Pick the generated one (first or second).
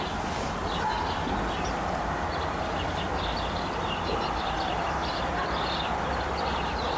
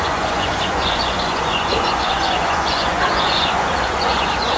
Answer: second